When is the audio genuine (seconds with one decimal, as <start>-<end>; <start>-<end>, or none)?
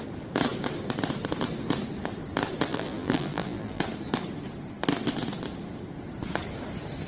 0.0-2.7; 3.8-7.1